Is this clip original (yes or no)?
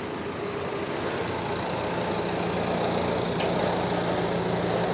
yes